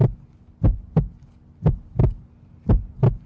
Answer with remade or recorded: recorded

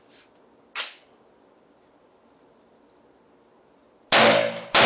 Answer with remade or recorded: recorded